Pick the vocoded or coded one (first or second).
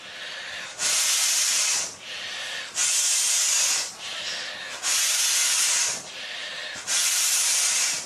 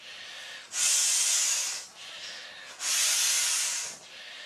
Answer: first